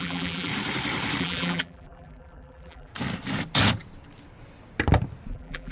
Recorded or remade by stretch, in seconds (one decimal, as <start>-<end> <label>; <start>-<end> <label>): 0.0-0.5 remade; 0.5-1.2 recorded; 1.2-2.9 remade; 2.9-5.3 recorded; 5.3-5.7 remade